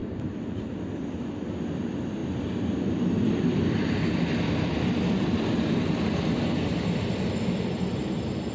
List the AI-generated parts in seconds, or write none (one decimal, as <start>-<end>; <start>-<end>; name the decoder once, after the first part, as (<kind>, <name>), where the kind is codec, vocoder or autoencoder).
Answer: none